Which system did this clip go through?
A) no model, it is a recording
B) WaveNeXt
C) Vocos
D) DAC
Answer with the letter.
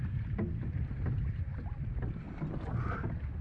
A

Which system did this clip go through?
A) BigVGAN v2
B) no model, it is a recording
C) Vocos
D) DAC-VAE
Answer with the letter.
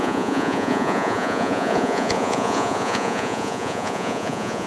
C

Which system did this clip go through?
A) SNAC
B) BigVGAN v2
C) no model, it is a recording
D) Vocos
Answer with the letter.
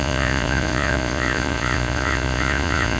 D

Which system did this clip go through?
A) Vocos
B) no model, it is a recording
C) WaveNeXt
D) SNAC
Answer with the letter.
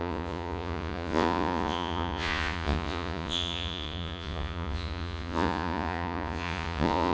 A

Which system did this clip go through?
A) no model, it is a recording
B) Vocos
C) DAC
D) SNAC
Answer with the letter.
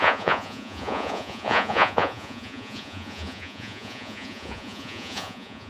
B